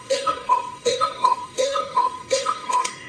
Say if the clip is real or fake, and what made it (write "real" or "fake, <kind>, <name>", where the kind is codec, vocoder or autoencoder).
fake, codec, SNAC